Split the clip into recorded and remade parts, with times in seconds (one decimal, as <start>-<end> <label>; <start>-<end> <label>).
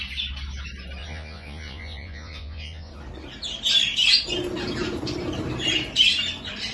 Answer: 0.0-1.0 recorded; 1.0-2.9 remade; 2.9-6.7 recorded